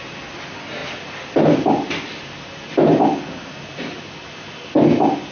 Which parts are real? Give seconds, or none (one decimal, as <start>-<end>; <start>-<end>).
0.0-5.3